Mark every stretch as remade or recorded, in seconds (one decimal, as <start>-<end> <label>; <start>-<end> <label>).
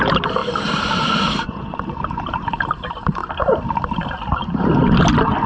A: 0.0-3.2 remade; 3.2-5.5 recorded